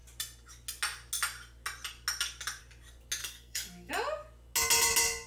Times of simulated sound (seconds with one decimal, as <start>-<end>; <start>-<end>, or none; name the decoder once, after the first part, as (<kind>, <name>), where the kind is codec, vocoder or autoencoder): 3.2-3.9 (codec, SNAC)